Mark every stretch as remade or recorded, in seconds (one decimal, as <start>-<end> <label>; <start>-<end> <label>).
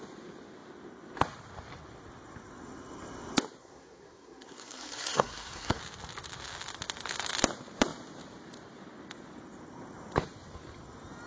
0.0-3.6 recorded; 3.6-5.8 remade; 5.8-11.3 recorded